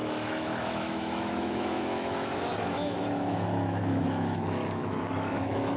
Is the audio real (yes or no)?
no